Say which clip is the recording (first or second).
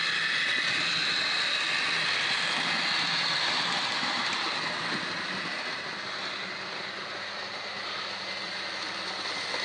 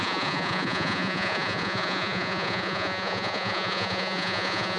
first